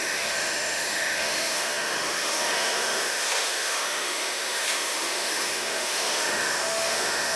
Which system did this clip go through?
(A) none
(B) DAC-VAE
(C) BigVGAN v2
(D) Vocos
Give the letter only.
B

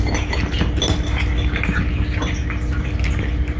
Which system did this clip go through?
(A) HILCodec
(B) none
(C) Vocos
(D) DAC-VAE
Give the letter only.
B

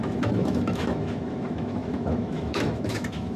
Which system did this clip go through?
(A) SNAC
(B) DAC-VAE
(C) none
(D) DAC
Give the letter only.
B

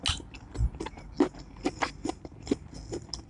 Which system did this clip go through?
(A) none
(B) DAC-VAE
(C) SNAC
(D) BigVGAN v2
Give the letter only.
A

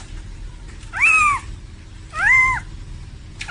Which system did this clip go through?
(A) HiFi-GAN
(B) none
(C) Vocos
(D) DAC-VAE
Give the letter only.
B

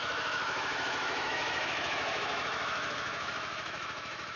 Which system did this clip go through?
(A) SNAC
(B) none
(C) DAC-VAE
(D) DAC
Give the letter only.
C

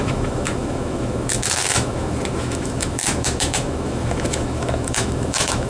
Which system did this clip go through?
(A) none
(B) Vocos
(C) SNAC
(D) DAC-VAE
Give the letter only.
D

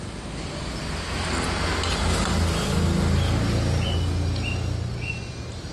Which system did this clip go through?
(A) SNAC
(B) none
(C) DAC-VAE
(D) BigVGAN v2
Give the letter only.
B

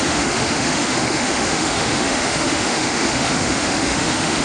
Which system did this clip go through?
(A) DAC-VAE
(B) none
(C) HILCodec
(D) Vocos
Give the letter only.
A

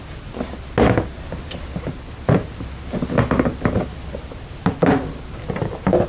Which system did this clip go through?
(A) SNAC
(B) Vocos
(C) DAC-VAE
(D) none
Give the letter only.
D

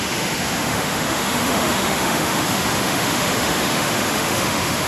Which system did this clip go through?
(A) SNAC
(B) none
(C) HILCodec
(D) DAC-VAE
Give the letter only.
D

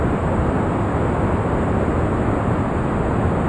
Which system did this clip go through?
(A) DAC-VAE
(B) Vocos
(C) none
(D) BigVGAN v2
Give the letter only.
C